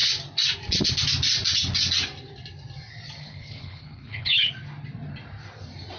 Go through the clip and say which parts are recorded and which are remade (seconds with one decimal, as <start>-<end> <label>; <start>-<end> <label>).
0.0-3.2 recorded; 3.2-4.5 remade; 4.5-6.0 recorded